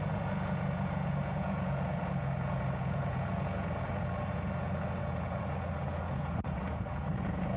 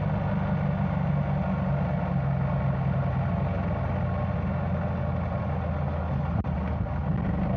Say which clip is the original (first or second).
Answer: second